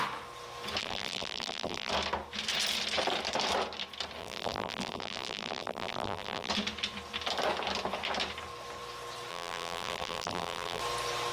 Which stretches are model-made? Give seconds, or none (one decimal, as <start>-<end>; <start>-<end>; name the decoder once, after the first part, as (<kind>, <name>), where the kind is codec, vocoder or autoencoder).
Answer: 0.8-1.9 (vocoder, BigVGAN v2); 4.2-6.5; 9.3-10.8